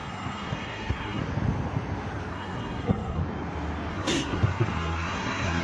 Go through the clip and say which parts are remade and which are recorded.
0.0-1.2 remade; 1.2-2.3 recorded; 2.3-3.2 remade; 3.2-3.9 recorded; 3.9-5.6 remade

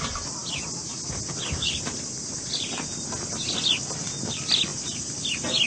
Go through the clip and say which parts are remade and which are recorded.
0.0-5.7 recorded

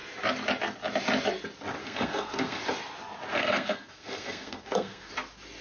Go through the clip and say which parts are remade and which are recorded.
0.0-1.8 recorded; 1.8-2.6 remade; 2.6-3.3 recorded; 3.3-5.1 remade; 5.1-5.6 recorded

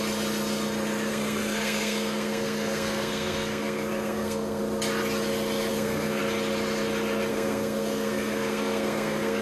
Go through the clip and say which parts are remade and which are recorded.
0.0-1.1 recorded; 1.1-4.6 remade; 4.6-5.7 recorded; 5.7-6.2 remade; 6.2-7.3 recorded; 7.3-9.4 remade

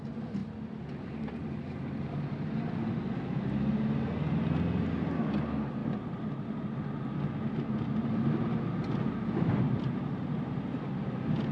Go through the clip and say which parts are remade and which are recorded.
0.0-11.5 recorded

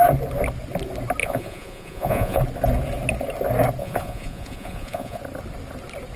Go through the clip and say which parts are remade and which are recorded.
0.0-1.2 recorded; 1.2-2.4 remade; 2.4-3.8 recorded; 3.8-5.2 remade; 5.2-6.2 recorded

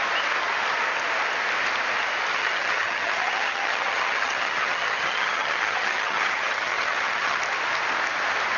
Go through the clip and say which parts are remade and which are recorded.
0.0-2.3 recorded; 2.3-7.4 remade; 7.4-8.6 recorded